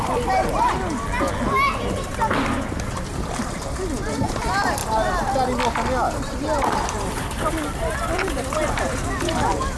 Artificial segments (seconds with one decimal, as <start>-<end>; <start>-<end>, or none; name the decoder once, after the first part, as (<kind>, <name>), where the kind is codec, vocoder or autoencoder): 0.0-0.4 (vocoder, BigVGAN v2); 1.8-4.8; 7.7-9.0